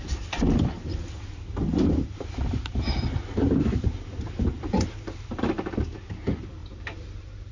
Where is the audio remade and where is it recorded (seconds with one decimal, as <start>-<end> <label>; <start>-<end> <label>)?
0.0-0.9 recorded; 0.9-5.4 remade; 5.4-6.6 recorded; 6.6-7.5 remade